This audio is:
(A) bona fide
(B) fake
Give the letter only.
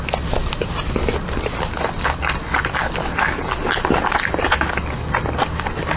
A